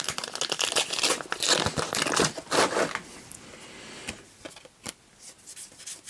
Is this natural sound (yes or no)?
yes